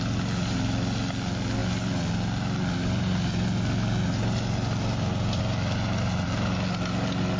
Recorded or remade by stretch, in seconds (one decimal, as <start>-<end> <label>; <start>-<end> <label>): 0.0-7.4 recorded